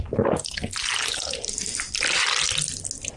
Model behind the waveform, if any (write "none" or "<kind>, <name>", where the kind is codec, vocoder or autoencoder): none